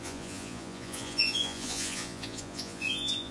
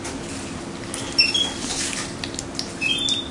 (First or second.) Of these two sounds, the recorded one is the second